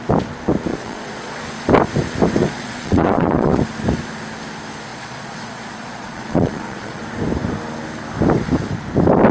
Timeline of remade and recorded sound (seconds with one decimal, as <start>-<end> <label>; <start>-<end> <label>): 0.0-0.7 recorded; 0.7-1.4 remade; 1.4-2.4 recorded; 2.4-3.6 remade; 3.6-4.9 recorded; 4.9-7.0 remade; 7.0-9.3 recorded